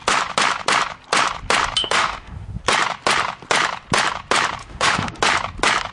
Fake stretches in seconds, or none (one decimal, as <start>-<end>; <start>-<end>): 1.8-2.6; 4.6-5.2